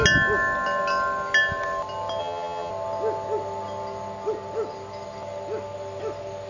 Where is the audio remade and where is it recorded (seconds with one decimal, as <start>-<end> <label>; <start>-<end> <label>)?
0.0-2.2 recorded; 2.2-2.7 remade; 2.7-6.5 recorded

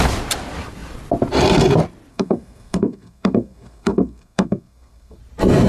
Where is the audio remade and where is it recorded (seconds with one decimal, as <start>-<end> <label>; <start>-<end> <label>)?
0.0-2.1 recorded; 2.1-5.2 remade; 5.2-5.7 recorded

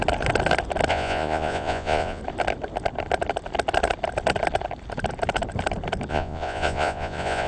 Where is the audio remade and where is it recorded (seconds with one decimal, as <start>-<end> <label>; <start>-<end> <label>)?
0.0-0.9 recorded; 0.9-2.2 remade; 2.2-6.1 recorded; 6.1-7.5 remade

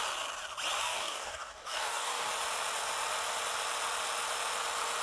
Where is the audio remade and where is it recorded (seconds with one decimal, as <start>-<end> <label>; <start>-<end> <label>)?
0.0-0.8 recorded; 0.8-2.3 remade; 2.3-5.0 recorded

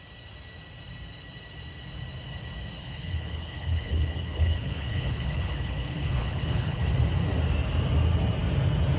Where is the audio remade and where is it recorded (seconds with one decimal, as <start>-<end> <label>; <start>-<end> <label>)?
0.0-2.8 recorded; 2.8-6.9 remade; 6.9-9.0 recorded

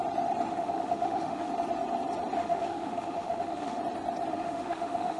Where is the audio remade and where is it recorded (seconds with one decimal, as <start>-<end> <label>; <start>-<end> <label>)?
0.0-0.5 recorded; 0.5-1.5 remade; 1.5-2.4 recorded; 2.4-3.8 remade; 3.8-4.3 recorded; 4.3-5.2 remade

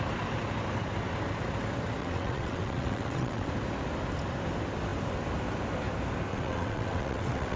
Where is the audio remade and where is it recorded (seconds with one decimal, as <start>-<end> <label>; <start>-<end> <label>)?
0.0-2.0 recorded; 2.0-3.5 remade; 3.5-6.3 recorded; 6.3-7.6 remade

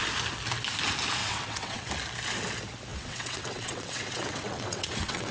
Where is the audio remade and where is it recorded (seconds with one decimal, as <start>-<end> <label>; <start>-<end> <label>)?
0.0-1.2 recorded; 1.2-1.9 remade; 1.9-2.9 recorded; 2.9-5.3 remade